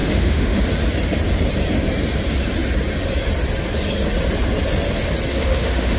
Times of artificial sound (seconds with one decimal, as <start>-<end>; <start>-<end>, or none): 0.0-0.6; 5.3-6.0